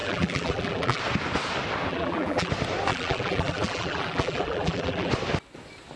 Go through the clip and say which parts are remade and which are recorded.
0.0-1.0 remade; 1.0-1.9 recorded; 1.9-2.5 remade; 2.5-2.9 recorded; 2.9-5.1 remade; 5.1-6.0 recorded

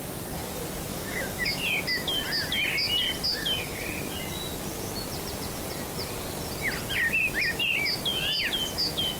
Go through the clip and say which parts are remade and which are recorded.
0.0-0.9 recorded; 0.9-1.7 remade; 1.7-3.3 recorded; 3.3-3.8 remade; 3.8-9.2 recorded

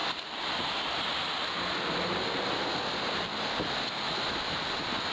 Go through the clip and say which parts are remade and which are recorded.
0.0-0.8 remade; 0.8-5.1 recorded

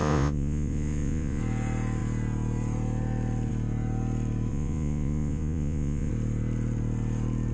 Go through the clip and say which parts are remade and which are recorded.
0.0-1.4 remade; 1.4-4.5 recorded; 4.5-6.1 remade; 6.1-7.5 recorded

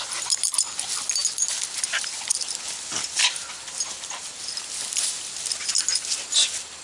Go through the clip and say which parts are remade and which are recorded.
0.0-6.8 recorded